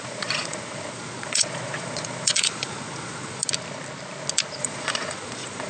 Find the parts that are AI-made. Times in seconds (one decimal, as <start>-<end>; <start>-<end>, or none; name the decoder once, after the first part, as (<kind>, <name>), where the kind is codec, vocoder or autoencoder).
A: 0.0-3.4 (vocoder, Vocos); 4.6-5.7